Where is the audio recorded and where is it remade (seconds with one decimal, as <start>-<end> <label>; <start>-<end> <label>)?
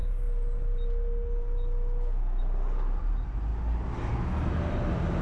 0.0-5.2 recorded